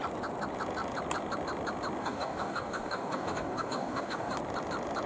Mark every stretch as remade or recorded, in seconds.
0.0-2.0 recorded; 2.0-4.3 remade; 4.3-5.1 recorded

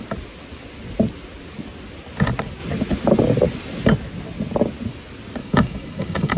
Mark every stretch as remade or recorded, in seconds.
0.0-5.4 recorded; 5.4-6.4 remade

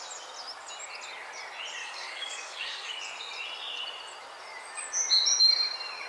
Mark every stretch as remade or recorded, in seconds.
0.0-1.8 recorded; 1.8-3.0 remade; 3.0-6.1 recorded

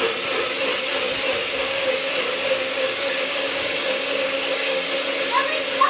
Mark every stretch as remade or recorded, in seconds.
0.0-1.4 recorded; 1.4-4.9 remade; 4.9-5.9 recorded

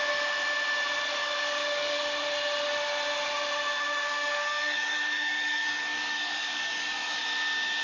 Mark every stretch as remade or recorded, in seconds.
0.0-1.2 recorded; 1.2-2.0 remade; 2.0-3.9 recorded; 3.9-7.2 remade; 7.2-7.8 recorded